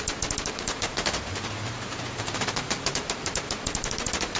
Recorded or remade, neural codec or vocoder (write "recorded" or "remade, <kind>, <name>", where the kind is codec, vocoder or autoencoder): remade, vocoder, BigVGAN v2